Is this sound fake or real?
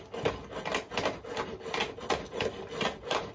real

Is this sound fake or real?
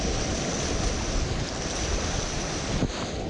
real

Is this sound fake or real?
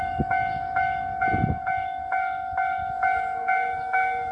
fake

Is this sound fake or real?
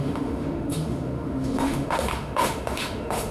fake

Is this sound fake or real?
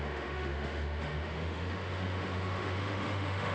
fake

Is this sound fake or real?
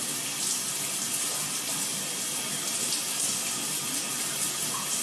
real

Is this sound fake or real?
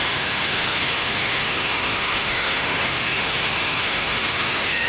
fake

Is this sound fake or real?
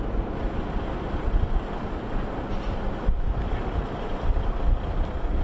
real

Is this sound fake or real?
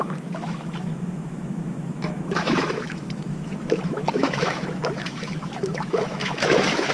fake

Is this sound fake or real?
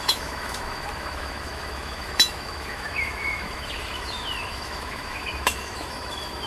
fake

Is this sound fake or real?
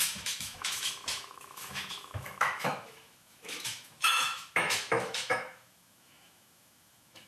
fake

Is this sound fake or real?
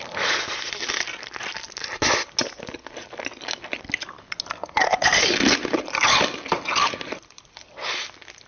real